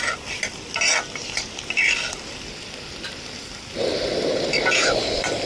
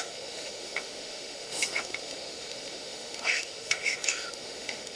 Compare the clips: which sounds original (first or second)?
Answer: first